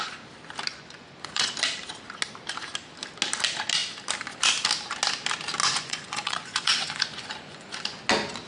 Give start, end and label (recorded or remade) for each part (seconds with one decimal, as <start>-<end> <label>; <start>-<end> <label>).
0.0-0.7 recorded; 0.7-1.5 remade; 1.5-5.6 recorded; 5.6-8.0 remade; 8.0-8.5 recorded